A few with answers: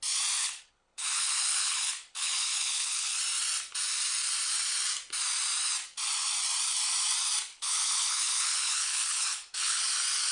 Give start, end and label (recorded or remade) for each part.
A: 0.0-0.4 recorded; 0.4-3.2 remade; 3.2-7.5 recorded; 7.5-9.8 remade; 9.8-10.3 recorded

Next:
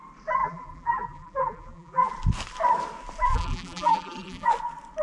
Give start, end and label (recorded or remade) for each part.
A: 0.0-0.4 recorded; 0.4-2.1 remade; 2.1-3.3 recorded; 3.3-4.5 remade; 4.5-5.0 recorded

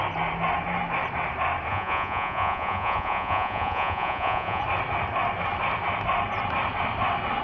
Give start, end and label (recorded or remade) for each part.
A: 0.0-1.7 recorded; 1.7-4.6 remade; 4.6-7.4 recorded

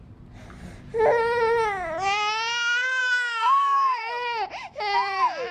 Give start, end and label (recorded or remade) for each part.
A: 0.0-3.0 recorded; 3.0-4.1 remade; 4.1-4.6 recorded; 4.6-5.5 remade

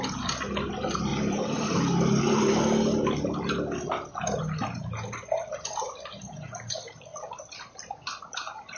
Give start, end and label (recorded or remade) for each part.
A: 0.0-1.1 recorded; 1.1-2.6 remade; 2.6-8.8 recorded

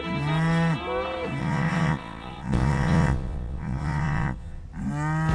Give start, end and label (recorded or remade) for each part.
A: 0.0-1.4 recorded; 1.4-4.6 remade; 4.6-5.3 recorded

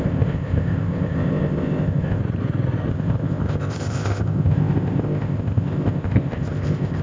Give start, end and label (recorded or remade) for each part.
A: 0.0-2.2 remade; 2.2-2.9 recorded; 2.9-7.0 remade

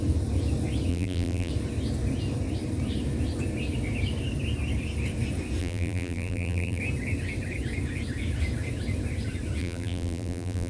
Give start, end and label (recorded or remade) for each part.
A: 0.0-0.9 recorded; 0.9-1.5 remade; 1.5-5.6 recorded; 5.6-6.8 remade; 6.8-9.6 recorded; 9.6-10.7 remade